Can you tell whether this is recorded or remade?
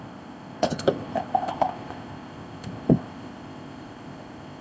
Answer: remade